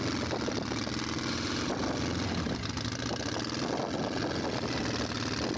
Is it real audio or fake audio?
real